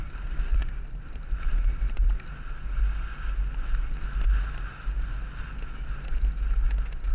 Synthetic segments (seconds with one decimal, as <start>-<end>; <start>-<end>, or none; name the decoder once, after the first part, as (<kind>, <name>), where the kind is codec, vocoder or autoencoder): 0.0-2.1 (vocoder, BigVGAN v2)